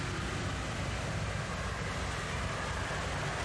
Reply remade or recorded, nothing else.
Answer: recorded